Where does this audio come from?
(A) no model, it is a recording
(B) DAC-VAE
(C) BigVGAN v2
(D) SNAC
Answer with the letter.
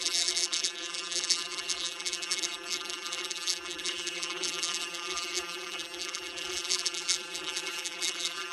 C